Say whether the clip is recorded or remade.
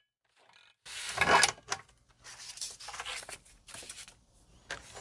recorded